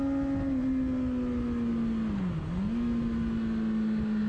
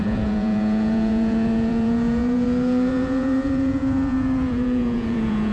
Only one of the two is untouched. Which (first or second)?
first